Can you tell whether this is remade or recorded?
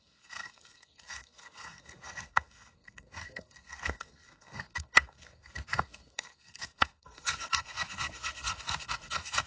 remade